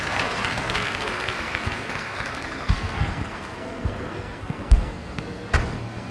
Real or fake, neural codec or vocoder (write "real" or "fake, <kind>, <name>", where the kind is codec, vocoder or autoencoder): fake, codec, SNAC